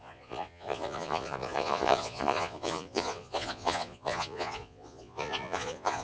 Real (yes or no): no